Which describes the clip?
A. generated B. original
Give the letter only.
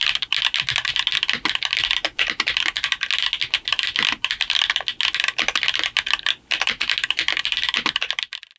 B